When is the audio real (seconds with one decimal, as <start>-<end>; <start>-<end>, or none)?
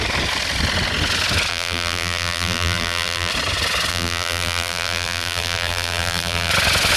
0.0-1.5; 3.3-3.9; 6.5-7.0